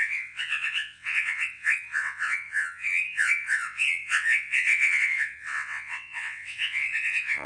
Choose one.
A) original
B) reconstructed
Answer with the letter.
B